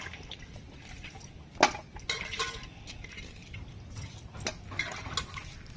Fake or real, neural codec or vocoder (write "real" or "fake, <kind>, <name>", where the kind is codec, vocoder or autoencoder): real